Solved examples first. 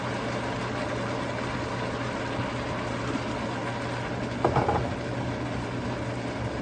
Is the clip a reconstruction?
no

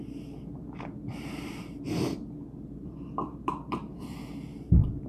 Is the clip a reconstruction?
yes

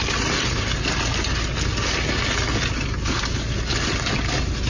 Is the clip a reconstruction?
no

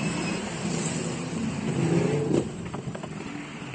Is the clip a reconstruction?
yes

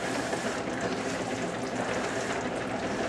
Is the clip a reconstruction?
yes